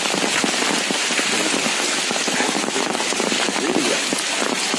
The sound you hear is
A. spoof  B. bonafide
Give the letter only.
B